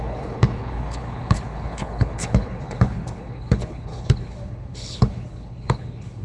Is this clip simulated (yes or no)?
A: yes